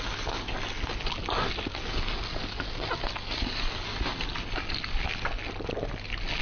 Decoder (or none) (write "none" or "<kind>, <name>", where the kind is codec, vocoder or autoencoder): none